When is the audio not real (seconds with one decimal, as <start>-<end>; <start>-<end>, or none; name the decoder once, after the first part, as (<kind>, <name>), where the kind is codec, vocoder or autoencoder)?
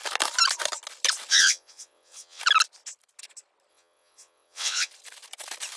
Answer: 1.3-2.4 (vocoder, WaveNeXt); 3.7-4.9